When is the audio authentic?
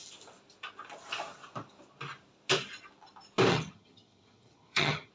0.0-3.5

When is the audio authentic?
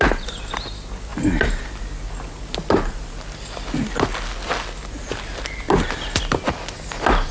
0.0-7.3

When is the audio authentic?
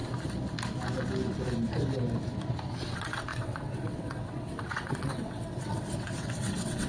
0.0-2.7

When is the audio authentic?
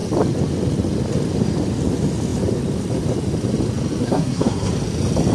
0.0-4.0; 4.7-5.3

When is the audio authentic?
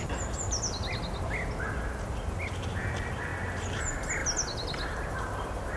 0.0-5.8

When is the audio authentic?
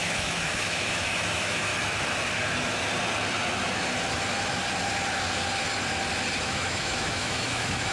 1.7-6.4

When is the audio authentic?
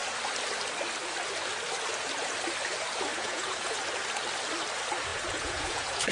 0.0-3.1; 3.8-5.1